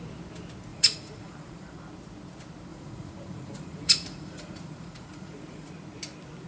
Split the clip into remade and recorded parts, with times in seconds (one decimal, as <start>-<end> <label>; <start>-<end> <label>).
0.0-0.7 recorded; 0.7-1.8 remade; 1.8-2.7 recorded; 2.7-5.7 remade; 5.7-6.5 recorded

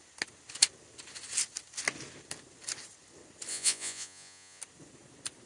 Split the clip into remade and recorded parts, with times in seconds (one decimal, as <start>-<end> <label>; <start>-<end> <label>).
0.0-3.5 recorded; 3.5-4.6 remade; 4.6-5.5 recorded

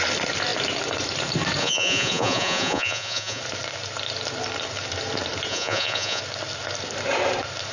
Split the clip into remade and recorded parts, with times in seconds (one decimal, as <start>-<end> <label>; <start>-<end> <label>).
0.0-1.6 recorded; 1.6-3.4 remade; 3.4-5.5 recorded; 5.5-6.2 remade; 6.2-7.7 recorded

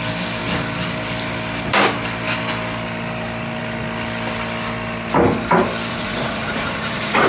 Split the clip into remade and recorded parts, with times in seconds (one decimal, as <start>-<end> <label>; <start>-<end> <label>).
0.0-5.9 recorded; 5.9-7.3 remade

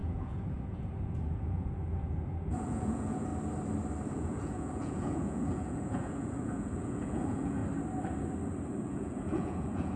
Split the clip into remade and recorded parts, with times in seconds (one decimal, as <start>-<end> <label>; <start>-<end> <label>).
0.0-3.3 remade; 3.3-4.1 recorded; 4.1-7.6 remade; 7.6-8.8 recorded; 8.8-10.0 remade